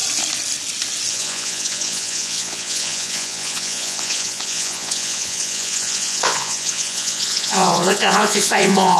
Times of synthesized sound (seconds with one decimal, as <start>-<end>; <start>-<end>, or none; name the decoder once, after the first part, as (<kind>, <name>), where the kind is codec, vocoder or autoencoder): 1.1-9.0 (vocoder, Vocos)